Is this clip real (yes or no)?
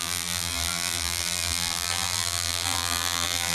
no